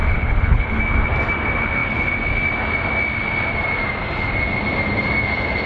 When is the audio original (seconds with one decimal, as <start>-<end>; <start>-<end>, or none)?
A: 0.8-5.7